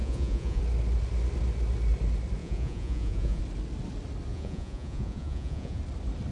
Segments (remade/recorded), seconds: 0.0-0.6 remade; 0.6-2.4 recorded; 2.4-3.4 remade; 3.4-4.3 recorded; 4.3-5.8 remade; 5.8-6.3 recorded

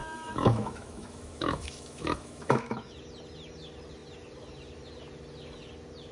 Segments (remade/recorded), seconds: 0.0-3.0 remade; 3.0-6.1 recorded

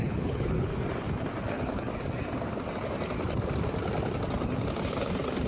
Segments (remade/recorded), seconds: 0.0-0.7 remade; 0.7-1.5 recorded; 1.5-1.9 remade; 1.9-5.5 recorded

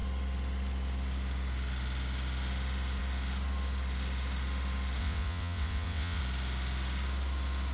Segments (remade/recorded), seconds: 0.0-5.0 recorded; 5.0-6.2 remade; 6.2-7.7 recorded

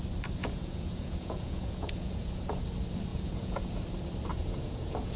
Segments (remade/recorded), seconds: 0.0-0.4 recorded; 0.4-2.4 remade; 2.4-3.1 recorded; 3.1-3.7 remade; 3.7-4.3 recorded; 4.3-5.2 remade